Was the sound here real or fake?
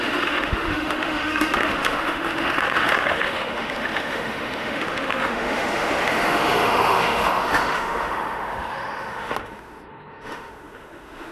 fake